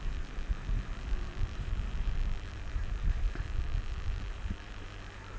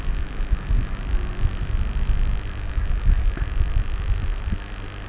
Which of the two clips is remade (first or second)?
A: first